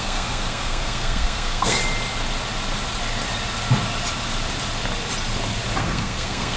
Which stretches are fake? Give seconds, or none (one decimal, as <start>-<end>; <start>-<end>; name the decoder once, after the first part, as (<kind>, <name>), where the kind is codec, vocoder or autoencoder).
0.0-1.8 (codec, SNAC); 5.8-6.6